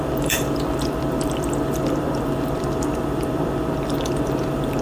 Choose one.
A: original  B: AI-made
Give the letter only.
B